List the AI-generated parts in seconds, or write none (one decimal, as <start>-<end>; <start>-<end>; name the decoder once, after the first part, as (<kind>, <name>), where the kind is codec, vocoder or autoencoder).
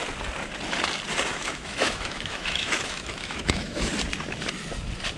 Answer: 1.3-3.9 (autoencoder, DAC-VAE)